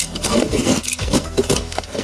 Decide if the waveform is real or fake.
fake